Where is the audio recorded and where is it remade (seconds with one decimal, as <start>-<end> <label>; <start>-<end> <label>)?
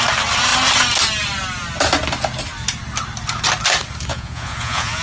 0.0-4.1 recorded; 4.1-5.0 remade